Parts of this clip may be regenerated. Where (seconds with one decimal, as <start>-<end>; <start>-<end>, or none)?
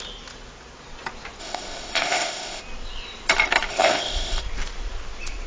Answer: 1.4-2.6; 3.7-4.4